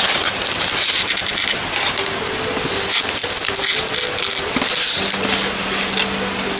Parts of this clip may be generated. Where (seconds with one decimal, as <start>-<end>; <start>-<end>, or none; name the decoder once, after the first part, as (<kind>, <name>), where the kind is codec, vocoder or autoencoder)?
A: none